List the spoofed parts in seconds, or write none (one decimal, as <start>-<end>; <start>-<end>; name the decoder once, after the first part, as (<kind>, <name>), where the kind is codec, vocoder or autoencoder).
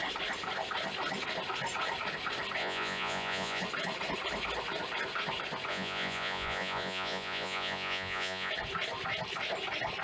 2.6-3.6 (vocoder, Vocos); 5.7-8.5